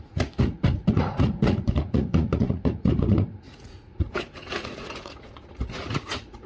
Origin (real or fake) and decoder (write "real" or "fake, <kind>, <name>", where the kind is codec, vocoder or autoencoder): fake, vocoder, Vocos